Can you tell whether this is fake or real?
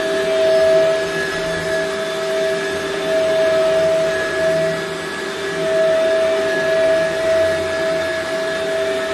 real